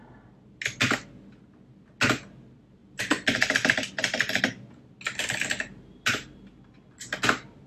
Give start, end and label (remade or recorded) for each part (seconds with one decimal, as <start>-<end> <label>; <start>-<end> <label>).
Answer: 0.0-2.8 recorded; 2.8-4.4 remade; 4.4-7.7 recorded